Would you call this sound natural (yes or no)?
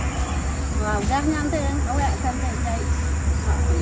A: yes